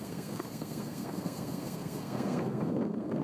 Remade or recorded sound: remade